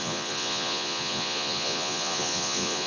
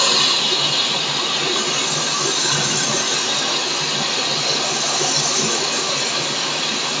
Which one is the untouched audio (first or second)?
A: second